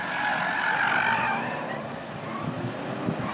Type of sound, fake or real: real